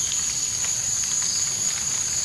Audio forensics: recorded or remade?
recorded